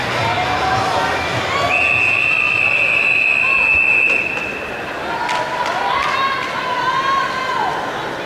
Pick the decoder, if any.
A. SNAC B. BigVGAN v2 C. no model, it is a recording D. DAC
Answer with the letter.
C